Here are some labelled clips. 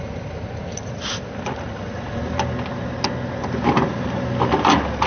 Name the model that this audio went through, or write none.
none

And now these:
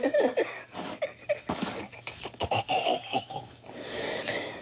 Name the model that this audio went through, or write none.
codec, DAC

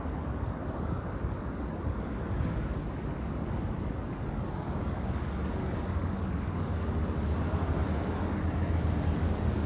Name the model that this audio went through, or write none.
codec, DAC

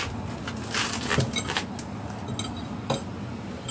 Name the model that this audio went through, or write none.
none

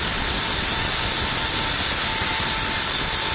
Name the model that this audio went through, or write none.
none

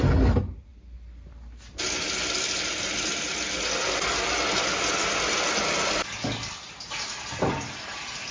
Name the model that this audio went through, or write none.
none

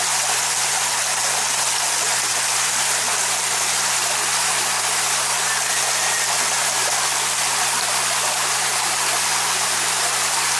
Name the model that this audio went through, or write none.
none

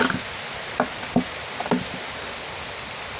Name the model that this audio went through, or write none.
none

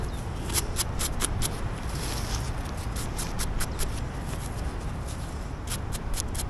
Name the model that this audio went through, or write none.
none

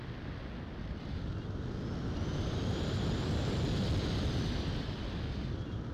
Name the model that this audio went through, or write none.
none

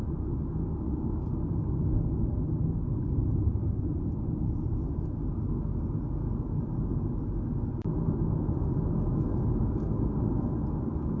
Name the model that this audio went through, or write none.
none